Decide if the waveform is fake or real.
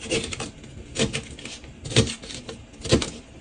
real